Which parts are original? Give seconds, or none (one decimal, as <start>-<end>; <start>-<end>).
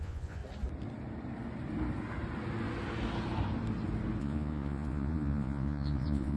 0.4-4.2